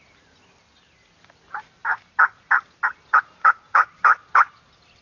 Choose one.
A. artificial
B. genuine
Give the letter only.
B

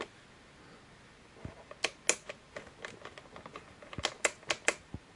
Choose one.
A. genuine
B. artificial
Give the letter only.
A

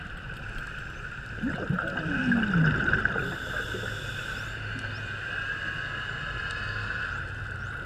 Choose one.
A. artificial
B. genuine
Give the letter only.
B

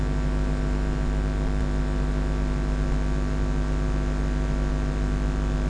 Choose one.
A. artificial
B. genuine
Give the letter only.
B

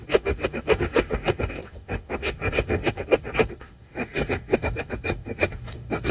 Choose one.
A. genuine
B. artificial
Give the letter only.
B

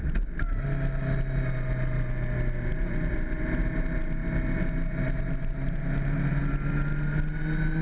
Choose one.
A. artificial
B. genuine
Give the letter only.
B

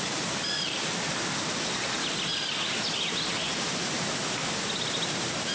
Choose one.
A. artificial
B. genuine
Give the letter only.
B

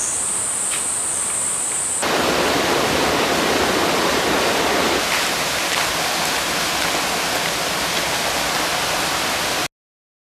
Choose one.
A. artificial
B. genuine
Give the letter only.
B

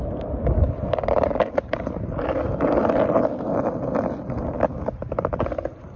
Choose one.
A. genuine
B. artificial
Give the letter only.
A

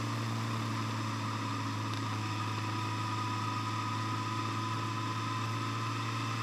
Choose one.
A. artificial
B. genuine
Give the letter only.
B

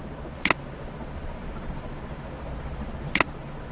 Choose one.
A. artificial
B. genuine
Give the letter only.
B